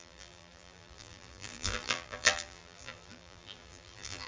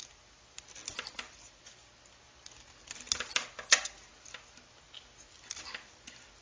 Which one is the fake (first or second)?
first